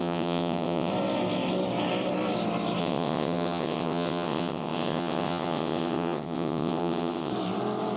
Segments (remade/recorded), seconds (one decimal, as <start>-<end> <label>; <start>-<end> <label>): 0.0-0.9 remade; 0.9-2.8 recorded; 2.8-7.3 remade; 7.3-8.0 recorded